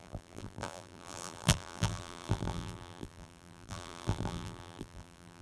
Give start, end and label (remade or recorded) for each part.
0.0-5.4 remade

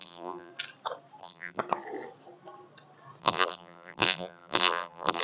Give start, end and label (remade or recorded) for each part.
0.0-0.5 remade; 0.5-1.2 recorded; 1.2-1.6 remade; 1.6-3.2 recorded; 3.2-5.2 remade